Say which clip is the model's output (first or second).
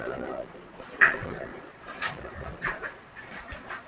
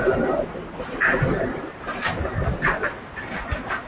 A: first